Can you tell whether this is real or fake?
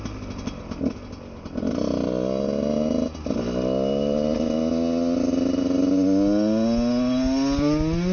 real